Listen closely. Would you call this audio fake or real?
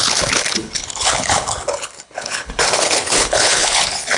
fake